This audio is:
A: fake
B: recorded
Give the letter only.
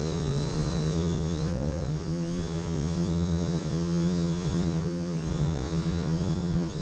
A